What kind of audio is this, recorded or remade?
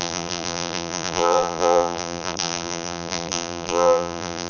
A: remade